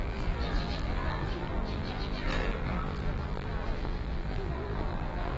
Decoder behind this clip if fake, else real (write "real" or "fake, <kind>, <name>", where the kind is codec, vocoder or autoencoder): fake, vocoder, BigVGAN v2